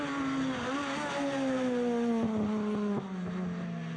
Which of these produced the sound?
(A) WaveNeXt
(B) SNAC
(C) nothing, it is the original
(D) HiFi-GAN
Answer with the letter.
C